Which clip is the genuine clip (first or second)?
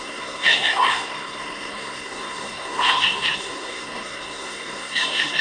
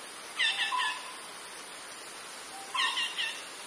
second